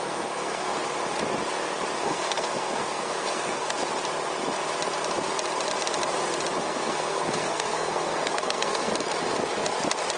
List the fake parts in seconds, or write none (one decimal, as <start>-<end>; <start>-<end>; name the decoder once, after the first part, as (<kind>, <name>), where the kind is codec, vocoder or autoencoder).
0.0-0.7 (codec, SNAC); 2.0-3.8; 6.6-8.9